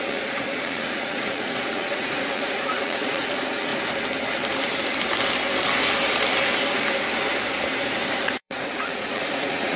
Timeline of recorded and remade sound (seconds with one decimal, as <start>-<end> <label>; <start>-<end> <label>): 0.0-3.7 remade; 3.7-8.1 recorded; 8.1-9.8 remade